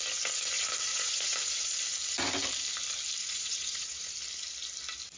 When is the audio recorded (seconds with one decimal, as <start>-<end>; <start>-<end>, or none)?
0.0-0.9; 1.6-3.2; 4.1-5.2